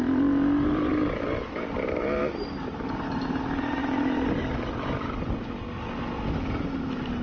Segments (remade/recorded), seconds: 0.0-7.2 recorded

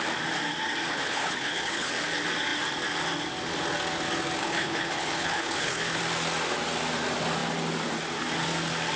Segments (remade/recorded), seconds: 0.0-0.9 recorded; 0.9-1.9 remade; 1.9-4.4 recorded; 4.4-6.0 remade; 6.0-9.0 recorded

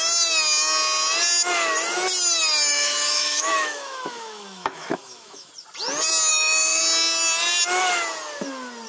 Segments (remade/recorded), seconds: 0.0-2.7 recorded; 2.7-5.5 remade; 5.5-6.3 recorded; 6.3-6.8 remade; 6.8-8.9 recorded

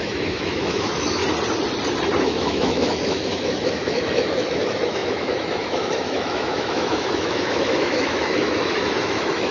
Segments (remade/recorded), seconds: 0.0-1.2 remade; 1.2-2.2 recorded; 2.2-9.5 remade

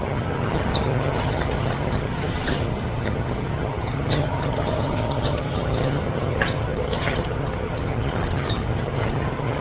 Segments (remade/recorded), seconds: 0.0-9.6 remade

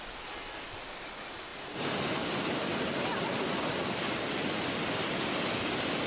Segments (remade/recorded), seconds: 0.0-6.1 recorded

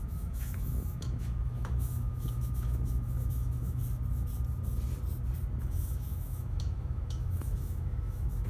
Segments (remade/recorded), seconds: 0.0-3.8 remade; 3.8-5.6 recorded; 5.6-8.5 remade